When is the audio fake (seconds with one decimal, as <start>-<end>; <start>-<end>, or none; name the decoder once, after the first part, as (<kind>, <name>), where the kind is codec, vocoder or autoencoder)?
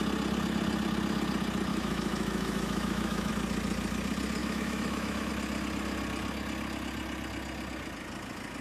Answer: 1.7-3.3 (autoencoder, DAC-VAE); 4.4-5.3